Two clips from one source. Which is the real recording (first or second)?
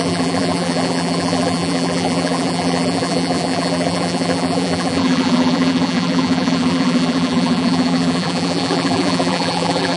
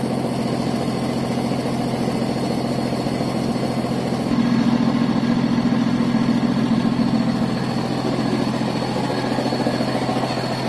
second